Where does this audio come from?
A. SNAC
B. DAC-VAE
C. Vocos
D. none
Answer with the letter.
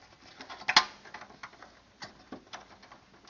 D